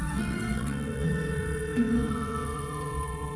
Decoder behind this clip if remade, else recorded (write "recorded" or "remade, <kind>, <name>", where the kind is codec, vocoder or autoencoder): remade, vocoder, WaveNeXt